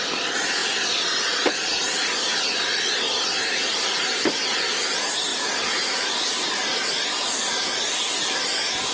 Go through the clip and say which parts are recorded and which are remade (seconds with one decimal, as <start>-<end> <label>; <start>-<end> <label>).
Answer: 0.0-5.3 recorded; 5.3-6.5 remade; 6.5-8.9 recorded